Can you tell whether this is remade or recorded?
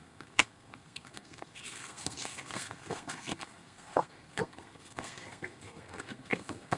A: remade